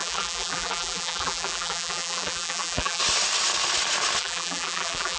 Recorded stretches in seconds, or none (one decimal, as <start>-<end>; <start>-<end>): 3.0-4.2